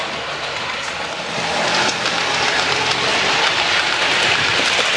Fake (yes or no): no